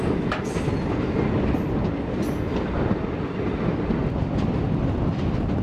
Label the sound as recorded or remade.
recorded